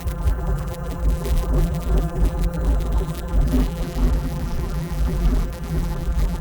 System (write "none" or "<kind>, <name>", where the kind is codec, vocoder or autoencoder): vocoder, BigVGAN v2